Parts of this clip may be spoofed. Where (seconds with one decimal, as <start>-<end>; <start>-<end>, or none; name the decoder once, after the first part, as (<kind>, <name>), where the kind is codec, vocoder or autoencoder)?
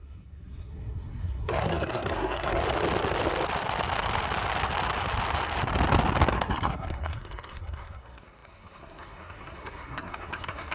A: 0.0-2.6 (codec, SNAC); 6.3-10.7